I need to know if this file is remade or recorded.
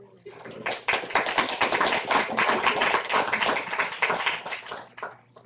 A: recorded